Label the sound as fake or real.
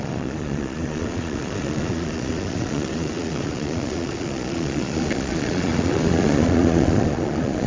fake